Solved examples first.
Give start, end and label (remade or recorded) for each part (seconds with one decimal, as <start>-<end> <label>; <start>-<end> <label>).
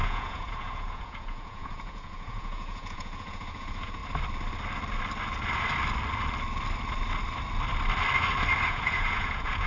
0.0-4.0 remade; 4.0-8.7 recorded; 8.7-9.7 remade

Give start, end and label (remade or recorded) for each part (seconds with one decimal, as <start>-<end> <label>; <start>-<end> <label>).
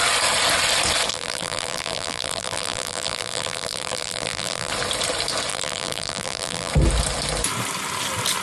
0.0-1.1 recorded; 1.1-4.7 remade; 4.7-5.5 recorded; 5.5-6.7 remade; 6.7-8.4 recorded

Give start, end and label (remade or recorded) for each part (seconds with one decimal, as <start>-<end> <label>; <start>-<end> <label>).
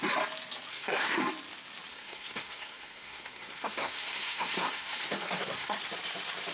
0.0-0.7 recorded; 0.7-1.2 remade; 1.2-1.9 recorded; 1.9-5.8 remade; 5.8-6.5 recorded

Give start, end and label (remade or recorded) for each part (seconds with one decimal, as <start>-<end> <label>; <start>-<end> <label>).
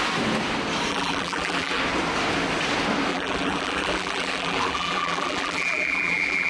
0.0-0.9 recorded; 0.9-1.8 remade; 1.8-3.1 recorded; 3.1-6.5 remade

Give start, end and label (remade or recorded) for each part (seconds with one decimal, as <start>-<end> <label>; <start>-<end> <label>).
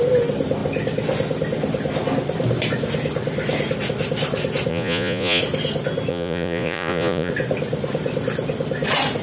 0.0-4.7 recorded; 4.7-5.4 remade; 5.4-6.1 recorded; 6.1-7.3 remade; 7.3-9.2 recorded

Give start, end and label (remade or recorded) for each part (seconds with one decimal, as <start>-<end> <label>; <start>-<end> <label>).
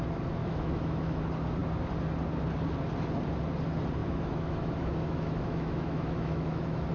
0.0-0.4 recorded; 0.4-1.2 remade; 1.2-4.0 recorded; 4.0-6.9 remade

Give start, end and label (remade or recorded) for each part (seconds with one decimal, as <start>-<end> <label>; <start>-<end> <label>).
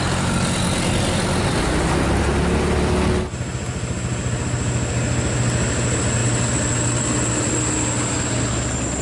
0.0-9.0 recorded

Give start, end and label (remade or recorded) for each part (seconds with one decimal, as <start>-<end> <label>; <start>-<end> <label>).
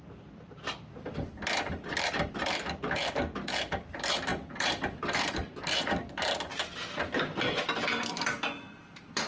0.0-6.5 remade; 6.5-8.1 recorded; 8.1-9.3 remade